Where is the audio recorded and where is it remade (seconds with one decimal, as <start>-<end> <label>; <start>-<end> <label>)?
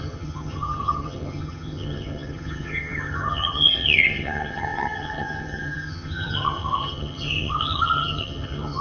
0.0-8.8 remade